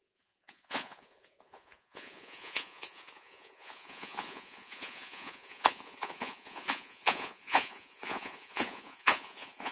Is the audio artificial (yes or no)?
yes